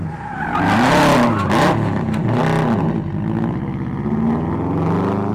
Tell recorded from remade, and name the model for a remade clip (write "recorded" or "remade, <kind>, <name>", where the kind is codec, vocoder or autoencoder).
recorded